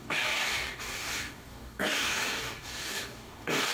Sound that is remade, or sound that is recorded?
remade